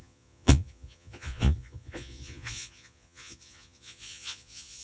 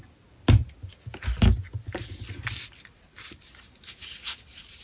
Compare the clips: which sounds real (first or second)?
second